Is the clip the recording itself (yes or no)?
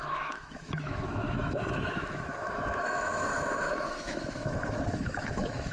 no